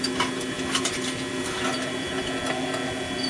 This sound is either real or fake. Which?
real